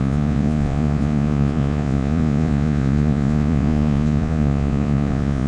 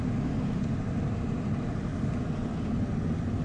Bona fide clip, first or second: second